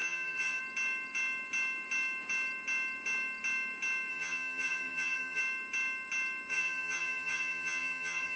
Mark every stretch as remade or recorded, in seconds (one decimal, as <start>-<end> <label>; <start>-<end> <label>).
0.0-0.6 remade; 0.6-4.1 recorded; 4.1-5.4 remade; 5.4-6.5 recorded; 6.5-8.4 remade